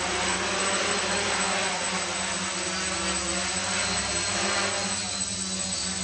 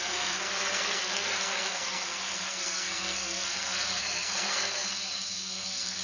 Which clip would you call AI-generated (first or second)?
second